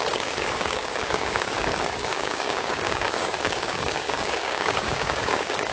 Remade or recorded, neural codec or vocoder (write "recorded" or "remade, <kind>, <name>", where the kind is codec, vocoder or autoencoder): remade, codec, DAC